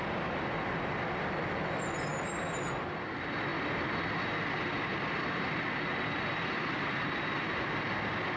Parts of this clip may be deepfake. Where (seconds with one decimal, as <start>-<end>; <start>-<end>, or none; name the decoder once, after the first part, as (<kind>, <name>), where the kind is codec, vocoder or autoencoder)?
none